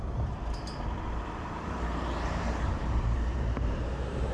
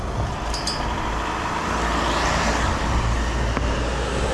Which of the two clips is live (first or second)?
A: second